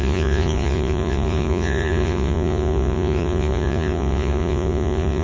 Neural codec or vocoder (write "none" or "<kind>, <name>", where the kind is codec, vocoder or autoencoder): vocoder, Vocos